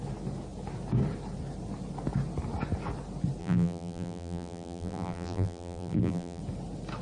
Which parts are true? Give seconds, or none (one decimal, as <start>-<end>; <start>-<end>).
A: 0.0-3.4; 6.4-7.0